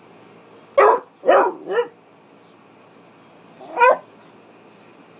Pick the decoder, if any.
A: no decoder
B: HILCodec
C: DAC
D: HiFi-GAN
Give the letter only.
A